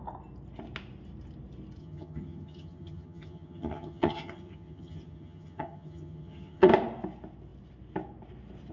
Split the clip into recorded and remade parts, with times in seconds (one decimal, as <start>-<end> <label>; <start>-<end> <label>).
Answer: 0.0-1.8 recorded; 1.8-6.7 remade; 6.7-8.7 recorded